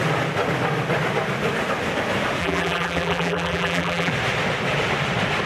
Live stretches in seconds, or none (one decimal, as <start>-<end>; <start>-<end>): 0.0-2.4; 4.1-5.5